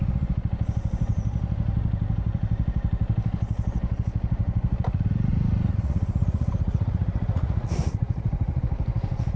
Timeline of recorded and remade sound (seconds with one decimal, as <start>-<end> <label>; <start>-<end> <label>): 0.0-5.3 recorded; 5.3-8.6 remade; 8.6-9.4 recorded